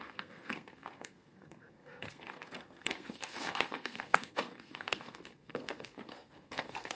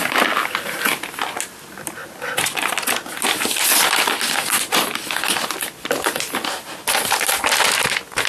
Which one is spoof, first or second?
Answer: first